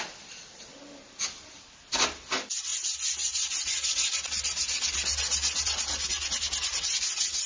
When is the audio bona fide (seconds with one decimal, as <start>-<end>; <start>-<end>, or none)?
0.0-7.5